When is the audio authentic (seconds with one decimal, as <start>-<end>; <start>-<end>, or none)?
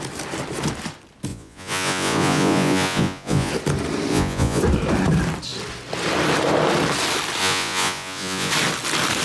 0.0-1.3; 3.5-4.1; 4.6-7.4; 8.5-9.2